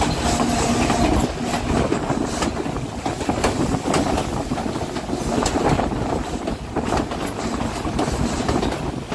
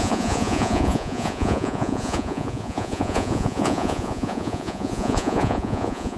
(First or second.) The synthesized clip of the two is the second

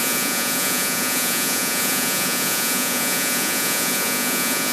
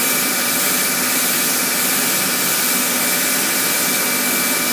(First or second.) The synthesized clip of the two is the first